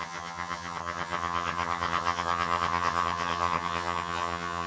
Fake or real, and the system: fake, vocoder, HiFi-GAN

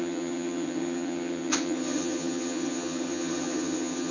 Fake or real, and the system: fake, vocoder, HiFi-GAN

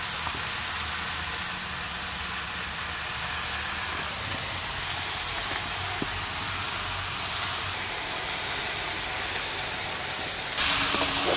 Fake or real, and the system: real